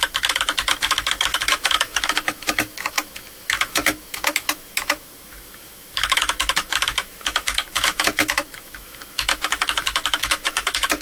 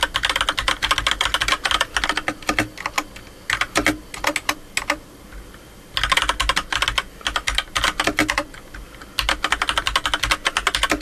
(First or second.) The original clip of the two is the second